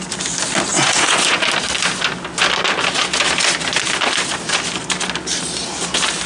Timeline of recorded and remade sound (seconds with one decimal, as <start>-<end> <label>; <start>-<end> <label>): 0.0-0.7 recorded; 0.7-1.4 remade; 1.4-6.3 recorded